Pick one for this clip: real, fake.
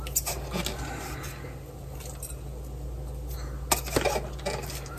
real